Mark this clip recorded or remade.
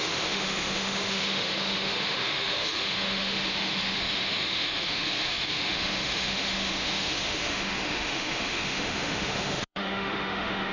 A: remade